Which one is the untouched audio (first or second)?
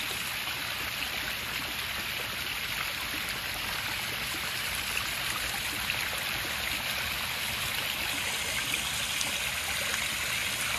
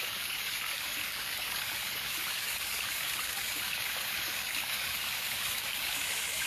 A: first